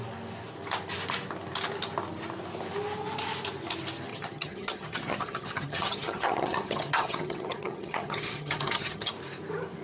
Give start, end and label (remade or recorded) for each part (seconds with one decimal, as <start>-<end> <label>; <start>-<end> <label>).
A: 0.0-4.1 recorded; 4.1-9.1 remade; 9.1-9.8 recorded